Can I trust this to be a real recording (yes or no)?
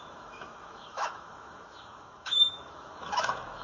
no